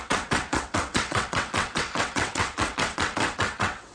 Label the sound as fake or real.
fake